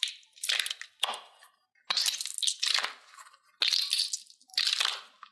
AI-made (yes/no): no